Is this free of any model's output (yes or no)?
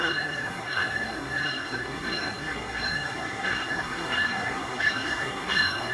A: no